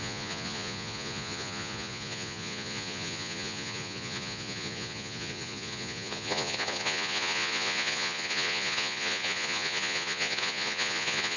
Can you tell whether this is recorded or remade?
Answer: remade